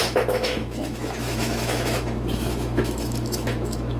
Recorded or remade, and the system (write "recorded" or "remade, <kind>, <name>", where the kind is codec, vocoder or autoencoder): remade, autoencoder, DAC-VAE